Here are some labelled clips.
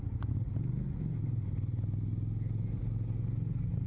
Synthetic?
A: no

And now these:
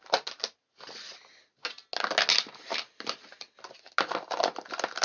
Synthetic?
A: no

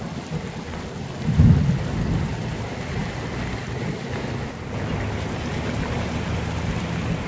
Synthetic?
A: no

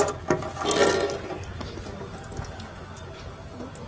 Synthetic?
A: no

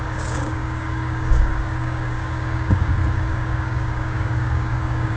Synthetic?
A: yes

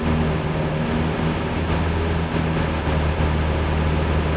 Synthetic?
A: no